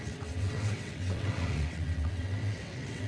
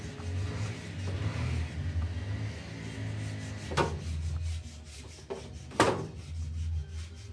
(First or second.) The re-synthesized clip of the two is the first